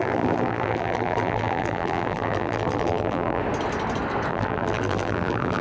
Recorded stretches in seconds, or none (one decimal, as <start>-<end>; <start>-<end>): 3.4-4.3